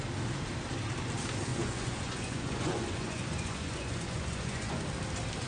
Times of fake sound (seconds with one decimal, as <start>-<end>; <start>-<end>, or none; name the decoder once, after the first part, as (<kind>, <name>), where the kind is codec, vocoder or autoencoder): 1.5-4.8 (vocoder, Vocos)